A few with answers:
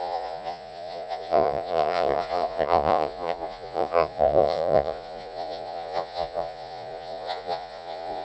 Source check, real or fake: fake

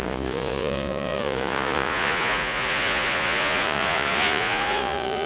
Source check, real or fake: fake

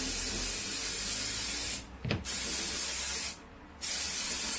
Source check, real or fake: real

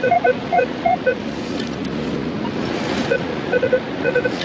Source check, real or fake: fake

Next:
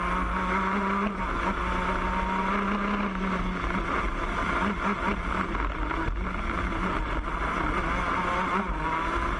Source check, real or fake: real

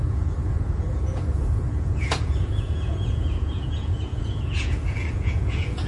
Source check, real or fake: fake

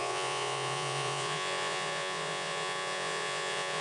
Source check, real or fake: fake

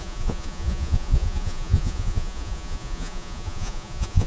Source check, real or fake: fake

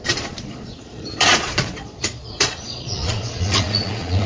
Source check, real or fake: fake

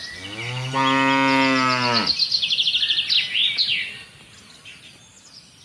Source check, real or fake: real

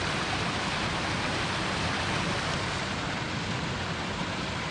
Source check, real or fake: real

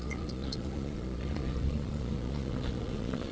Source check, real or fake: fake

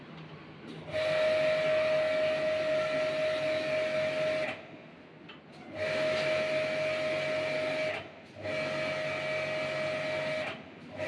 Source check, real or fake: real